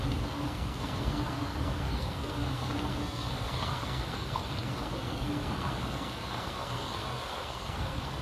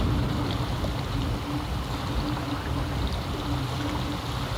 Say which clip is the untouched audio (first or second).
second